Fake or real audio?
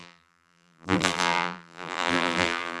fake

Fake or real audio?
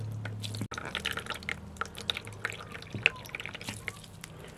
real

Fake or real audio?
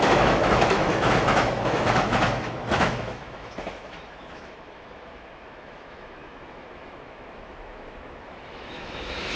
fake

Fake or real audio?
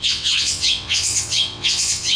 fake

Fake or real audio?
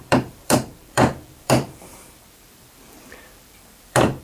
fake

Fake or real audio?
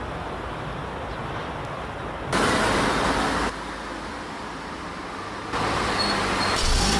real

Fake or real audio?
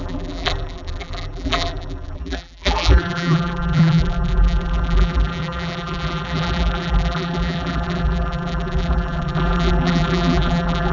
fake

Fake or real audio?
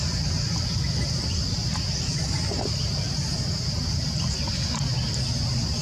real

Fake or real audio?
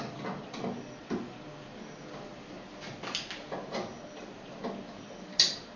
real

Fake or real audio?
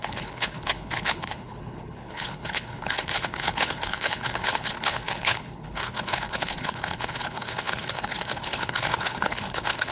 fake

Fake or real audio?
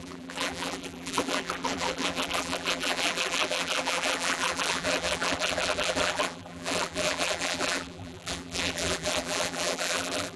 fake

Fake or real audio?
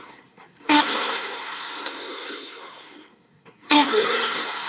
fake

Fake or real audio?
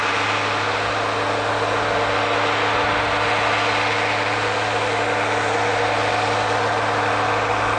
real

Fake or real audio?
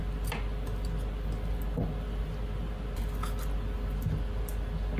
real